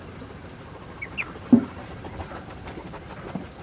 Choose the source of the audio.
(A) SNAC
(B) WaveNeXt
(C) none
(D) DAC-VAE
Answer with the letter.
C